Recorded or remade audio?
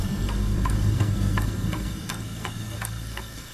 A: remade